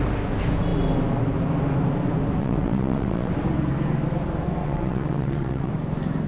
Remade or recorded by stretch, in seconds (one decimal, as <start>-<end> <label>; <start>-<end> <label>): 0.0-2.4 recorded; 2.4-3.3 remade; 3.3-4.6 recorded; 4.6-5.7 remade; 5.7-6.3 recorded